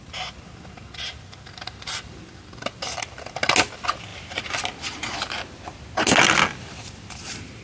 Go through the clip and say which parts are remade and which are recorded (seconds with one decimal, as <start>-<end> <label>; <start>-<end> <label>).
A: 0.0-7.6 recorded